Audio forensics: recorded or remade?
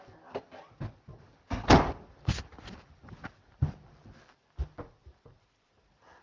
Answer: recorded